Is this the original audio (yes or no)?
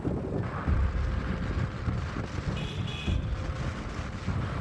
yes